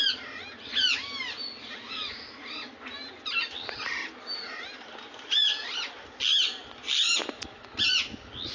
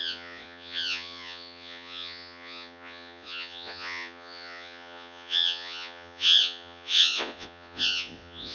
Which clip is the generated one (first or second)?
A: second